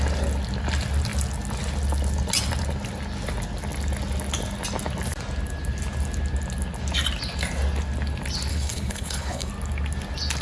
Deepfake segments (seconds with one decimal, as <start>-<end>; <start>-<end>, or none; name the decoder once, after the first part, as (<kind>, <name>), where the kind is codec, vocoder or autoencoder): 8.5-9.5 (codec, HILCodec)